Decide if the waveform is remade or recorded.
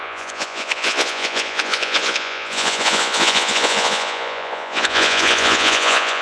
remade